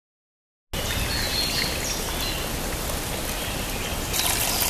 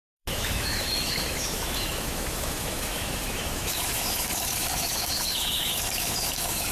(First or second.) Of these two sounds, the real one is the first